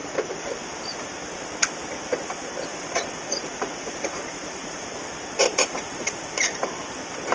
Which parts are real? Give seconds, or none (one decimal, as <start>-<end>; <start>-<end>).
0.5-2.7; 5.0-5.5; 6.7-7.3